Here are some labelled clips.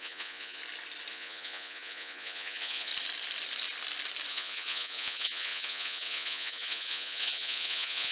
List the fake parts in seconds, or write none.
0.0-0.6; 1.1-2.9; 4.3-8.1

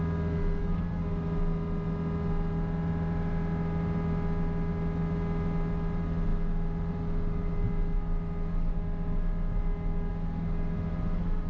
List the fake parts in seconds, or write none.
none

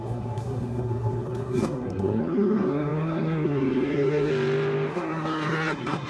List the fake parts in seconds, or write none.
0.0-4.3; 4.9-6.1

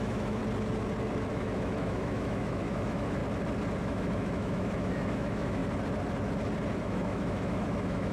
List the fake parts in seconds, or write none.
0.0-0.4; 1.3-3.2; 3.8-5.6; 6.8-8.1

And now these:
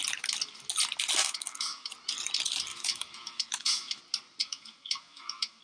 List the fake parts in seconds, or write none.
1.2-1.9; 2.7-4.0; 4.4-5.6

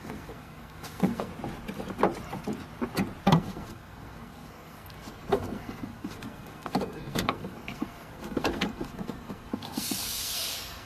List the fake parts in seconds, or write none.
0.0-1.3; 3.2-10.9

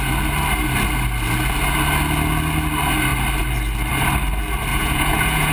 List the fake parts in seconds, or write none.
4.7-5.5

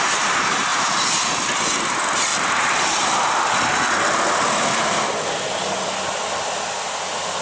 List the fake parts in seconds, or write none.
none